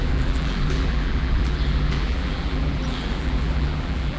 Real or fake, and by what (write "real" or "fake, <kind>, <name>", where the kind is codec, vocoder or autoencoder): fake, vocoder, BigVGAN v2